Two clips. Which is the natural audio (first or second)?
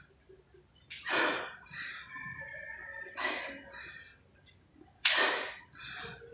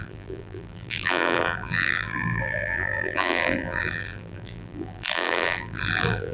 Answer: first